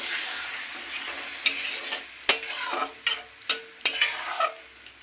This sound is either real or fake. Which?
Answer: real